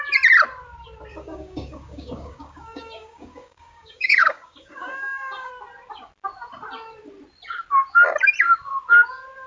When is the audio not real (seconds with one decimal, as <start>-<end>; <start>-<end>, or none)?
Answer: 1.1-5.5